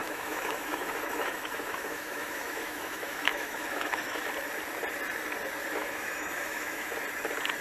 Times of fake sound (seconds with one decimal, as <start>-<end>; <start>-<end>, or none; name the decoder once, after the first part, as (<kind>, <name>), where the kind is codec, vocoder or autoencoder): 0.0-4.2 (autoencoder, DAC-VAE); 5.8-6.9

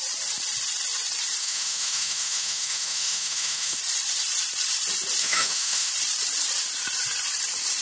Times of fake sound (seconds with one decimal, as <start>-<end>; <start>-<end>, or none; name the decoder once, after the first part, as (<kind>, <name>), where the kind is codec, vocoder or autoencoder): 1.4-3.8 (autoencoder, DAC-VAE); 5.2-5.9

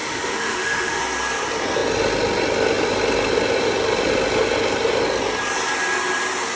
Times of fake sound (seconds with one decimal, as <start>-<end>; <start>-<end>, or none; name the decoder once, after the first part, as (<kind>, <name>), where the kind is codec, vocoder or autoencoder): 0.0-1.0 (autoencoder, DAC-VAE)

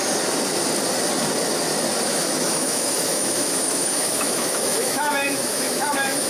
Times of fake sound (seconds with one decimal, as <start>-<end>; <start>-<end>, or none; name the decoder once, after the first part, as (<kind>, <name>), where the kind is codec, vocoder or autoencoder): 2.1-6.3 (autoencoder, DAC-VAE)

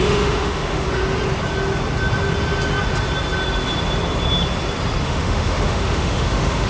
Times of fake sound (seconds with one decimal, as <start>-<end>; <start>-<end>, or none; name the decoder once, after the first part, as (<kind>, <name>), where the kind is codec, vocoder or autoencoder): 0.0-1.0 (autoencoder, DAC-VAE); 5.0-6.7

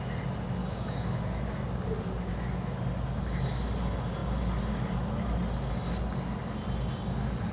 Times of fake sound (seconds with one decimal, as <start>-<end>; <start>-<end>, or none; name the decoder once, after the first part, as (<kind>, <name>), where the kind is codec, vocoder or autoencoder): 0.6-1.2 (autoencoder, DAC-VAE)